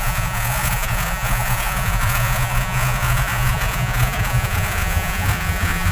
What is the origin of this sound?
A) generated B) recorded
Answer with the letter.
A